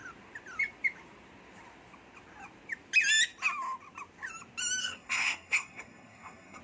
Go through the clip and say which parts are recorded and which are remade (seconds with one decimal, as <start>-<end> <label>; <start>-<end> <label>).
0.0-4.8 recorded; 4.8-6.6 remade